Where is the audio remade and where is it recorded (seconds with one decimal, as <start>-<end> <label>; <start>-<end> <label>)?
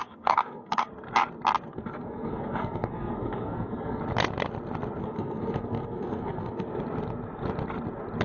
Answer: 0.0-0.9 remade; 0.9-1.7 recorded; 1.7-4.0 remade; 4.0-5.0 recorded; 5.0-6.8 remade; 6.8-8.2 recorded